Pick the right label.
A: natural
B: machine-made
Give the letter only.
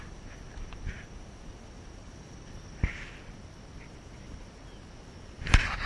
A